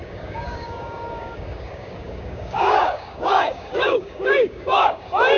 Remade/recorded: remade